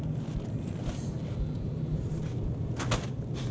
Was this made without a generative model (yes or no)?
yes